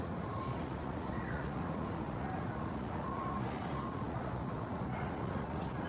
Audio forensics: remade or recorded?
remade